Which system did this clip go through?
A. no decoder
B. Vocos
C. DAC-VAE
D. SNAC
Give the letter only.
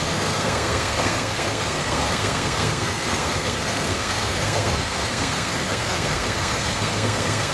D